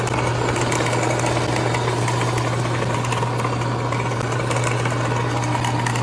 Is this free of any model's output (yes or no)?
yes